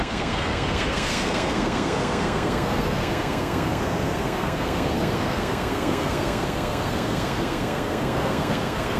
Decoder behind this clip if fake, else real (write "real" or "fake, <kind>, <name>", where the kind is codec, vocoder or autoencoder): fake, codec, SNAC